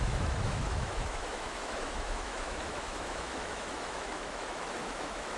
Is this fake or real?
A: fake